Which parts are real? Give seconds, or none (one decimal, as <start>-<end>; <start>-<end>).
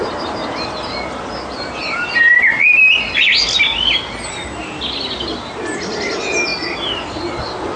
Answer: 0.0-7.8